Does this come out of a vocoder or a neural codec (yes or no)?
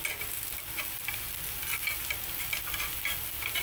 no